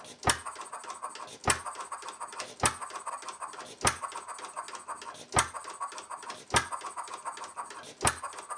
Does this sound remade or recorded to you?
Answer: recorded